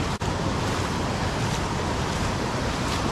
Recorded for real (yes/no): yes